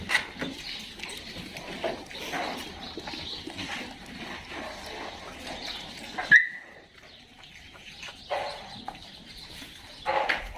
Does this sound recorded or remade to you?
recorded